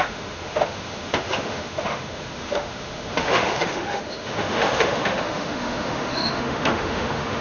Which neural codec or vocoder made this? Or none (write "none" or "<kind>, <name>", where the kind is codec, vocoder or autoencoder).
autoencoder, DAC-VAE